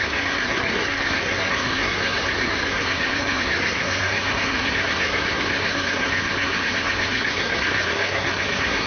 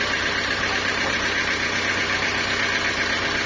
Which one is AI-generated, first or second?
first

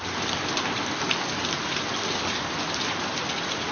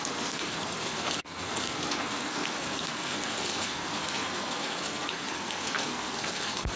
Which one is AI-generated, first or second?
second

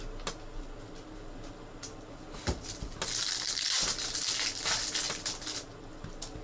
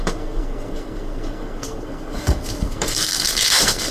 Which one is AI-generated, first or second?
second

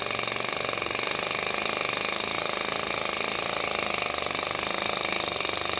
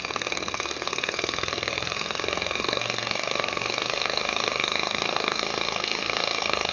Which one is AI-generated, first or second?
second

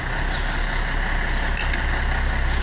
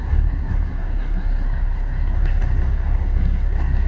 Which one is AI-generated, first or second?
second